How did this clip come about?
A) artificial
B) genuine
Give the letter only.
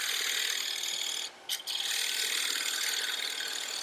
B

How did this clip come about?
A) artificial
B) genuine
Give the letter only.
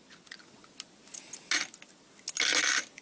B